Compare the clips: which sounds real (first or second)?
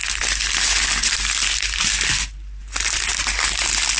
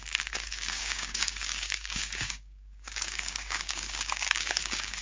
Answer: first